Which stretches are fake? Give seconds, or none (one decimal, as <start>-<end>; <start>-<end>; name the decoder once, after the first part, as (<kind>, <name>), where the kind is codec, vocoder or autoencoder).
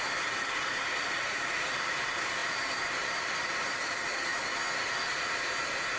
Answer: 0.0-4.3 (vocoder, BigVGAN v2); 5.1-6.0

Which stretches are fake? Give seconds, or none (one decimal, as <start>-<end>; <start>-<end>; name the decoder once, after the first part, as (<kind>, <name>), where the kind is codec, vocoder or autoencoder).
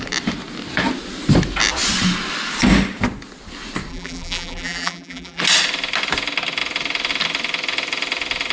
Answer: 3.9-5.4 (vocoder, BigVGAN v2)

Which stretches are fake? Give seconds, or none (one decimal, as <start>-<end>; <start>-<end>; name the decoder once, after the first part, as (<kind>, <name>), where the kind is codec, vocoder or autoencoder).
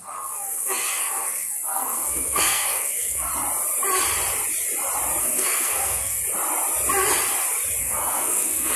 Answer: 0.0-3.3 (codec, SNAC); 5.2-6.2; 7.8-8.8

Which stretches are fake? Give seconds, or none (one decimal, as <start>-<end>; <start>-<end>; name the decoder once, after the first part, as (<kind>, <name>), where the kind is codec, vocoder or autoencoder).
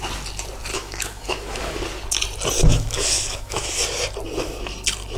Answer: 0.7-1.8 (autoencoder, DAC-VAE); 2.6-3.8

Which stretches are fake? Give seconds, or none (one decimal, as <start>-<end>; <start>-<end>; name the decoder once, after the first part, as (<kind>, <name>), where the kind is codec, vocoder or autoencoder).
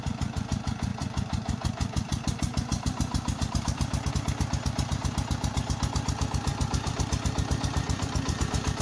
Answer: 0.9-4.1 (vocoder, BigVGAN v2); 6.5-8.4